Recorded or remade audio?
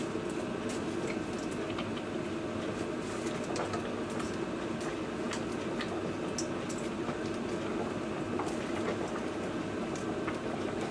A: recorded